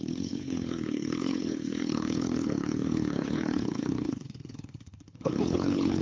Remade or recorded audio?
remade